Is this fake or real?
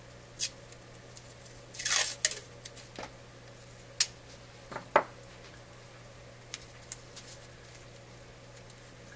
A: real